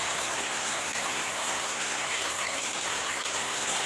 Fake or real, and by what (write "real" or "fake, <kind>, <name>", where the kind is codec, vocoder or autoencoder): fake, codec, SNAC